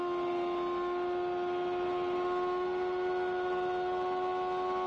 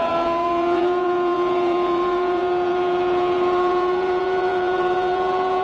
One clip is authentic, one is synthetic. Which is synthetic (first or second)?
second